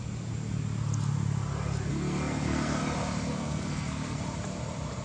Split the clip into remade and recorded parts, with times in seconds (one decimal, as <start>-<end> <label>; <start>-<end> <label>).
0.0-1.9 recorded; 1.9-2.8 remade; 2.8-3.3 recorded; 3.3-4.2 remade; 4.2-5.0 recorded